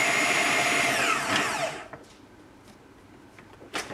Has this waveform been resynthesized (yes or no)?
no